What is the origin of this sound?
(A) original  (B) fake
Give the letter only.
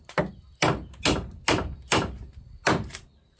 A